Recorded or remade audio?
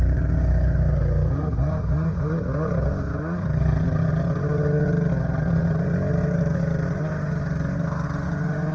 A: recorded